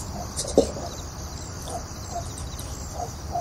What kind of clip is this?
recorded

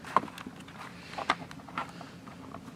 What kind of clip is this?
recorded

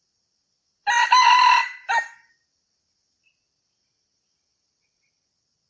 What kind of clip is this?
recorded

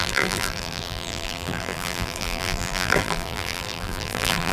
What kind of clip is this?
remade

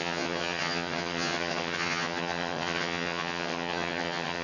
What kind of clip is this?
remade